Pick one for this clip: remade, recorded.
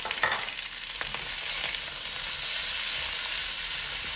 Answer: recorded